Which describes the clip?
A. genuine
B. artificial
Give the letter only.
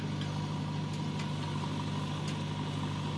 A